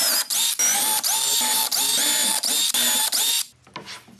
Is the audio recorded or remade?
recorded